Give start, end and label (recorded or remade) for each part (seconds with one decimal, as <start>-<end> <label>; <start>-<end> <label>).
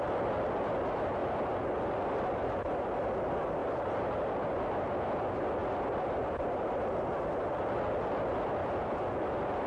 0.0-3.6 recorded; 3.6-4.3 remade; 4.3-5.6 recorded; 5.6-7.1 remade; 7.1-8.6 recorded; 8.6-9.7 remade